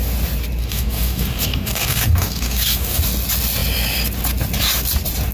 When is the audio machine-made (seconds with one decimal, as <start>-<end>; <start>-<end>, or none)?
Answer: 0.6-3.0